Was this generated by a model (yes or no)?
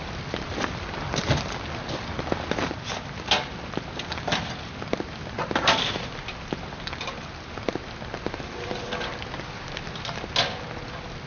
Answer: no